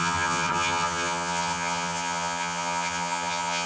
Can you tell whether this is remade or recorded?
remade